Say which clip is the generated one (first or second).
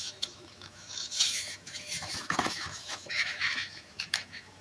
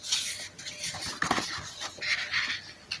first